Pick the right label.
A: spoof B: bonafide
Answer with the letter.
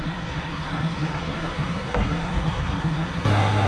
A